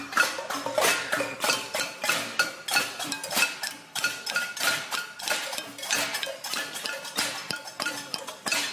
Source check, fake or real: real